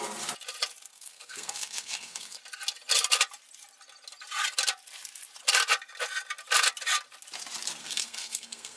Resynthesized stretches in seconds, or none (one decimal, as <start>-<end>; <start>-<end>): 0.9-2.4; 7.8-8.8